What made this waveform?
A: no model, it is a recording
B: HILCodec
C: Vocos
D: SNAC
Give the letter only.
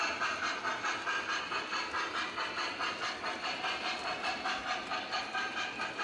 A